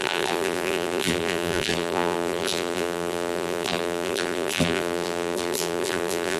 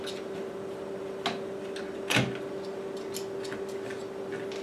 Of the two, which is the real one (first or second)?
second